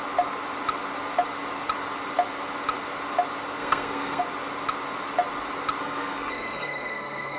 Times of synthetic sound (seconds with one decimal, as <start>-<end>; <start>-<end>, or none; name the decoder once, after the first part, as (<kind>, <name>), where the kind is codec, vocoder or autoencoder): 3.6-4.2 (codec, SNAC); 5.8-7.4